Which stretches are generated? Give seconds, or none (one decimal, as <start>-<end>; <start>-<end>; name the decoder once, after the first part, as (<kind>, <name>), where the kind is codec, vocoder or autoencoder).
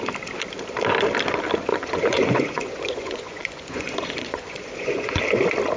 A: 1.7-5.2 (vocoder, Vocos)